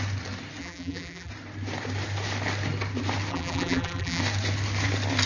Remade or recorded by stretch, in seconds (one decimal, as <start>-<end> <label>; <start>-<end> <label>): 0.0-0.6 recorded; 0.6-1.3 remade; 1.3-3.3 recorded; 3.3-4.2 remade; 4.2-5.3 recorded